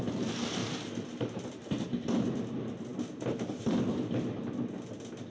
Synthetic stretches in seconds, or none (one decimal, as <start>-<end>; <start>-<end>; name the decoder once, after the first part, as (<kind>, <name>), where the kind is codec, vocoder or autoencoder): 0.6-2.2 (vocoder, BigVGAN v2)